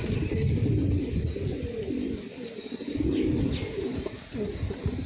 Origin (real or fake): real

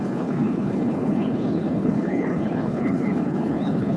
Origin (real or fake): fake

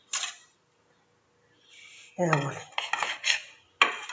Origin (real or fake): real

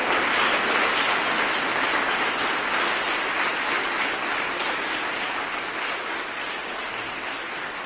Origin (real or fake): real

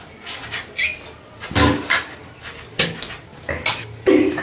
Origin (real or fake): real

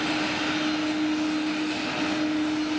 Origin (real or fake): real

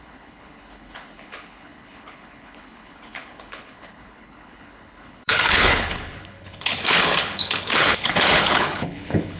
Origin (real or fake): fake